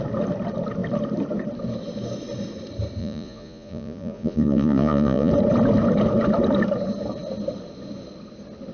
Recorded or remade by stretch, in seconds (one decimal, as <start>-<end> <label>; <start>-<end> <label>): 0.0-3.0 recorded; 3.0-5.3 remade; 5.3-8.7 recorded